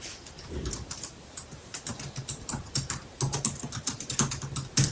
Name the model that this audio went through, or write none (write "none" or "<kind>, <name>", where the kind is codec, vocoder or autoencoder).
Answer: vocoder, BigVGAN v2